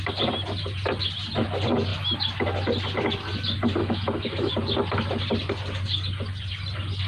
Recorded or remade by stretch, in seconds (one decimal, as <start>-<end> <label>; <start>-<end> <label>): 0.0-3.8 recorded; 3.8-4.5 remade; 4.5-7.1 recorded